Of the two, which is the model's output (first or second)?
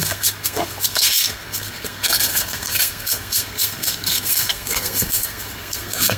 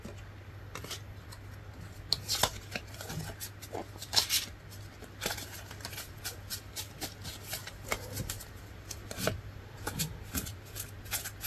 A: first